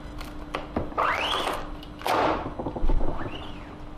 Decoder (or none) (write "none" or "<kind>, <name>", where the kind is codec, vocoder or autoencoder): none